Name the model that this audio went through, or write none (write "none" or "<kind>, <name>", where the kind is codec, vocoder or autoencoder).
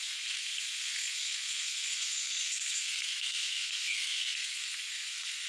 codec, SNAC